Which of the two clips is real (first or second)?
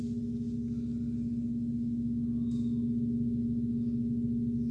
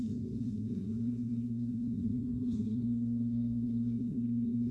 first